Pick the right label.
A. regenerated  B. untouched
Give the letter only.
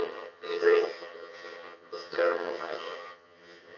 A